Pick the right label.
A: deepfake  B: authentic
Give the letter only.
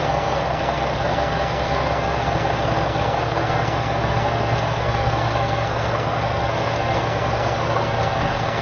A